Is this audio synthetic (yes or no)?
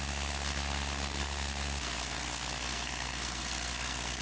yes